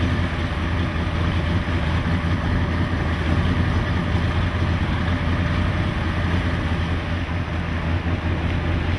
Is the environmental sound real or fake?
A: real